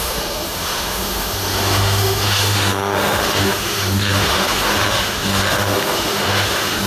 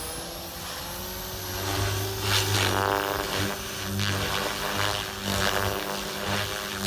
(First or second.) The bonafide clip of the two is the second